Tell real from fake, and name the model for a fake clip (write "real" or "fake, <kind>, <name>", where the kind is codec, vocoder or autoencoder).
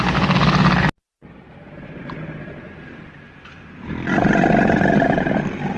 real